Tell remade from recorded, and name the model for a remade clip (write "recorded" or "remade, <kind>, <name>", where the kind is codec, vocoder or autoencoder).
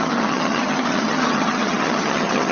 remade, vocoder, HiFi-GAN